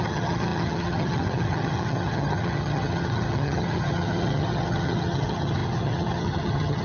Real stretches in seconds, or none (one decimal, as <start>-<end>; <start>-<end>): none